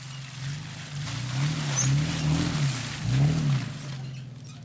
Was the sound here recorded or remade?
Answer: recorded